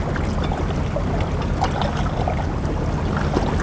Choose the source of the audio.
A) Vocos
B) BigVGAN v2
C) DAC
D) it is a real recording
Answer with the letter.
D